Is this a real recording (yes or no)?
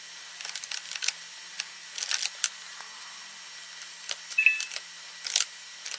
yes